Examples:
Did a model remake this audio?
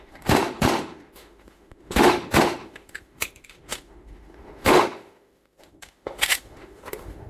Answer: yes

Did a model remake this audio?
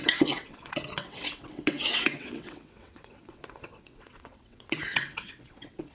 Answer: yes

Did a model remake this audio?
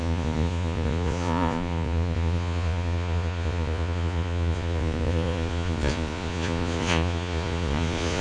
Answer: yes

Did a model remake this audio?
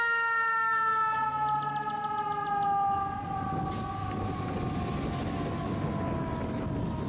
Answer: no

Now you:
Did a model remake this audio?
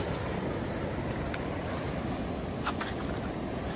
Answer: yes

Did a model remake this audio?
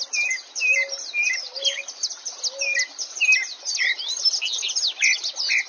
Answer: no